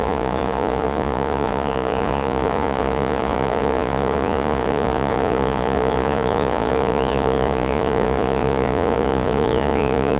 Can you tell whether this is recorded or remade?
remade